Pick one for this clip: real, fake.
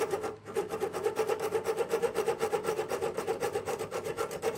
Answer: fake